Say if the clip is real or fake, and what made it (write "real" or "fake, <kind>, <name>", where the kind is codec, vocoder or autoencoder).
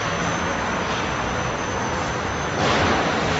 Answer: real